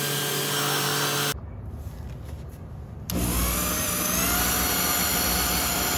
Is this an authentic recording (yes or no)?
yes